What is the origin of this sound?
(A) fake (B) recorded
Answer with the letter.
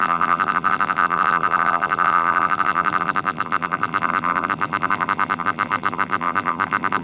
A